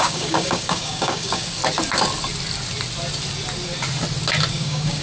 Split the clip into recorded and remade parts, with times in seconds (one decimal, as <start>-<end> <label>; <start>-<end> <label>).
0.0-1.6 remade; 1.6-4.5 recorded; 4.5-5.0 remade